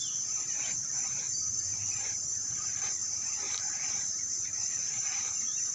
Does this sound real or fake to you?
fake